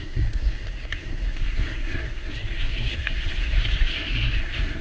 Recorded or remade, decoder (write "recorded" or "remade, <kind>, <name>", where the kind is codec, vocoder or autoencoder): remade, codec, SNAC